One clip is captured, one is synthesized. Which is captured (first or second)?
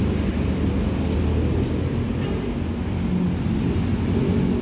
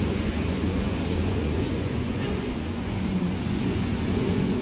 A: first